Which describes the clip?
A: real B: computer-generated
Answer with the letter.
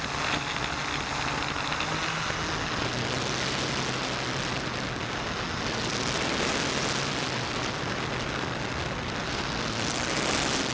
A